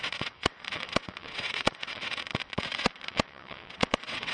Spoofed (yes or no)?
yes